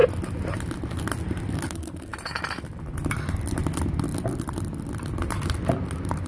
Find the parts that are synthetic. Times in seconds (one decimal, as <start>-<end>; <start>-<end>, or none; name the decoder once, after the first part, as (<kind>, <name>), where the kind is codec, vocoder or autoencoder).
none